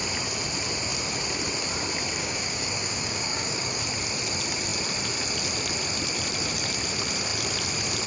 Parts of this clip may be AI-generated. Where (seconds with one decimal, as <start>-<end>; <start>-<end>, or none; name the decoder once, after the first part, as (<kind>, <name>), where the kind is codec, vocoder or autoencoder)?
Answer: 2.2-3.8 (codec, DAC)